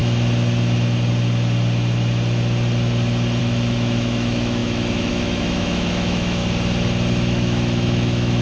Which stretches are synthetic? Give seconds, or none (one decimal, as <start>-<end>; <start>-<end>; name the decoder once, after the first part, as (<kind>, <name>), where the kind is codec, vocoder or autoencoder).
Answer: 3.4-6.4 (autoencoder, DAC-VAE); 7.1-8.4